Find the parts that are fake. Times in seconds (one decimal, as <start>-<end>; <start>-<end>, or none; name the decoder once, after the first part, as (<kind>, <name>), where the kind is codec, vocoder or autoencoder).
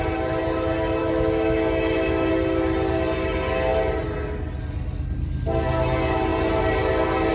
1.0-2.3 (autoencoder, DAC-VAE)